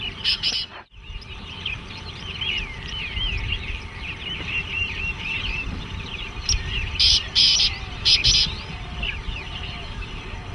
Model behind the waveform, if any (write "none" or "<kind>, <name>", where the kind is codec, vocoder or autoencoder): vocoder, BigVGAN v2